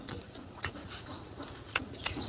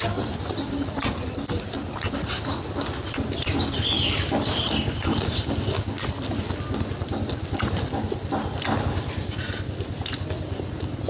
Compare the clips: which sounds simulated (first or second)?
first